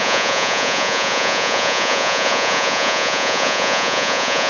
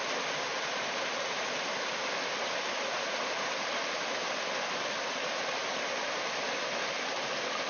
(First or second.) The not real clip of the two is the first